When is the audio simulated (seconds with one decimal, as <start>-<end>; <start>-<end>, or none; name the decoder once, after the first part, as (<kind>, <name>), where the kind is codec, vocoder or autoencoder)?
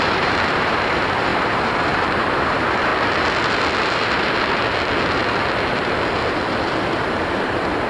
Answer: 0.0-2.9 (vocoder, BigVGAN v2); 6.8-7.9